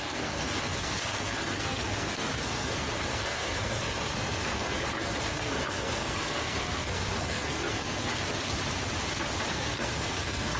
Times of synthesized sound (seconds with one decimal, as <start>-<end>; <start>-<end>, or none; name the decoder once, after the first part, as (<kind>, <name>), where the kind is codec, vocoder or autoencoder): 0.0-8.1 (codec, SNAC); 9.5-10.6